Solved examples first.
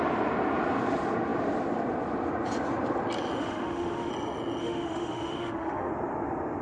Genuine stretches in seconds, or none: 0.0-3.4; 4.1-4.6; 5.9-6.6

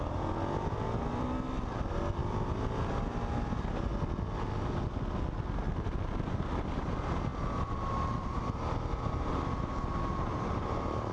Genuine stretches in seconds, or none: 0.0-2.2; 3.6-7.3; 8.9-11.1

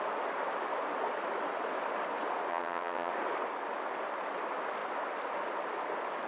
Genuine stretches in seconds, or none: 0.0-2.5; 3.1-6.3

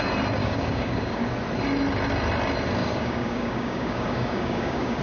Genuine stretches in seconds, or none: 0.0-0.4; 1.2-2.8